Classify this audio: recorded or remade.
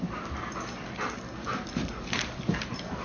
recorded